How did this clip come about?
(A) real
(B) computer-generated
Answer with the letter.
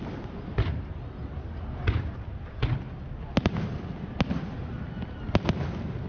A